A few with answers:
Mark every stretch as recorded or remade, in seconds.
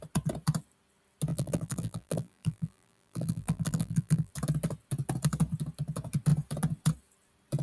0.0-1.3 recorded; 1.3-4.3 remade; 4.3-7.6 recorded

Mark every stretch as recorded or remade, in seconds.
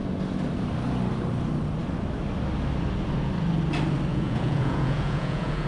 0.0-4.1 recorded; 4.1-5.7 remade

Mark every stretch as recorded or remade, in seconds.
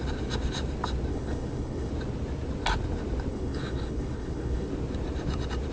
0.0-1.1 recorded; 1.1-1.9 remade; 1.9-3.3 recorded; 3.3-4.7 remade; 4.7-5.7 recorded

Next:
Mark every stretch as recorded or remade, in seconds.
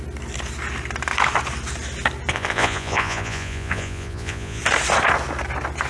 0.0-2.3 recorded; 2.3-4.6 remade; 4.6-5.9 recorded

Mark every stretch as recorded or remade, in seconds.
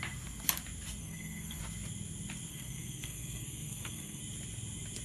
0.0-1.0 recorded; 1.0-1.6 remade; 1.6-2.5 recorded; 2.5-4.2 remade; 4.2-5.0 recorded